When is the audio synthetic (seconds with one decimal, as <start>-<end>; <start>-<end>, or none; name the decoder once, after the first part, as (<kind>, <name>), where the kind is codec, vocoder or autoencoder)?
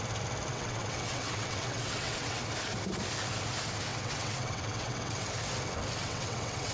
0.5-2.4 (vocoder, WaveNeXt); 3.9-5.3; 6.0-6.7